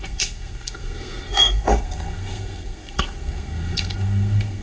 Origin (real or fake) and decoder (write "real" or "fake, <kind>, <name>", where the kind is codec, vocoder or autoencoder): fake, codec, SNAC